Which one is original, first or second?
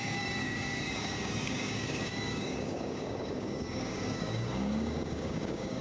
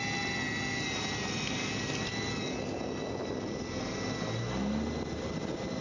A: second